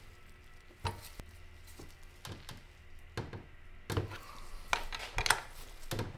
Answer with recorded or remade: recorded